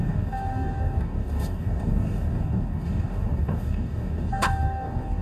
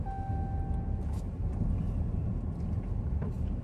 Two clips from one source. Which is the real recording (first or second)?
second